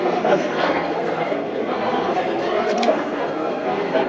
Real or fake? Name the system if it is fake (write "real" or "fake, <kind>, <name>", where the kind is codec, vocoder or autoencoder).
fake, codec, SNAC